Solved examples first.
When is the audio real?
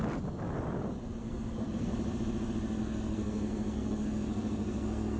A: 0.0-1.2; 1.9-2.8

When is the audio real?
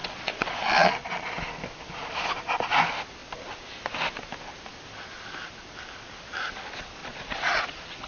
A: 1.3-7.0